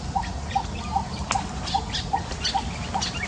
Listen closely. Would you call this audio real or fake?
real